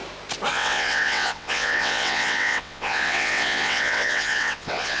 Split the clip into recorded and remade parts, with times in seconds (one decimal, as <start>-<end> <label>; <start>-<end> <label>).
0.0-0.5 recorded; 0.5-5.0 remade